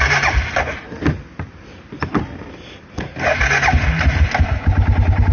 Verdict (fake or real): real